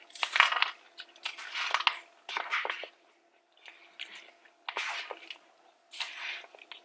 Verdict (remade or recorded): recorded